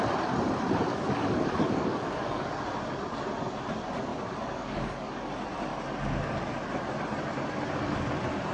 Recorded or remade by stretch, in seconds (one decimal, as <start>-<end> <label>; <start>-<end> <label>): 0.0-0.9 recorded; 0.9-2.5 remade; 2.5-4.1 recorded; 4.1-5.3 remade; 5.3-8.5 recorded